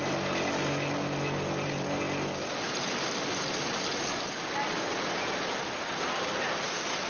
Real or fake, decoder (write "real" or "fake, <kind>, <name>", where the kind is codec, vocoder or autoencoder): real